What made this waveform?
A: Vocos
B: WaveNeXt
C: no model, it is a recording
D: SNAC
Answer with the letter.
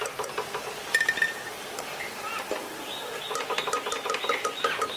C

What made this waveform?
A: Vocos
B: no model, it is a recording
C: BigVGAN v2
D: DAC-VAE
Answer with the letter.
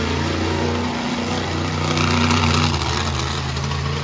B